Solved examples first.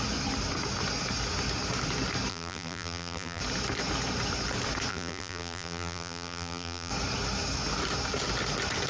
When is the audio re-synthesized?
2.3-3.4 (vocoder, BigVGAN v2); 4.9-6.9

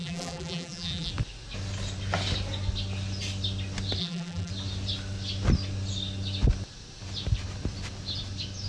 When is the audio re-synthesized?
0.0-1.1 (vocoder, BigVGAN v2); 4.0-4.5

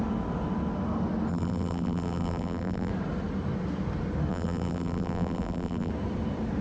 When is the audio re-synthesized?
1.3-2.9 (vocoder, BigVGAN v2); 4.3-5.9

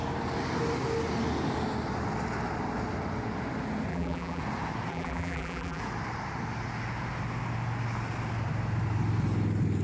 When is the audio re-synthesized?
3.9-4.4 (vocoder, BigVGAN v2); 4.9-5.8